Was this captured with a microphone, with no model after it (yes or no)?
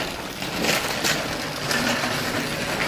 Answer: yes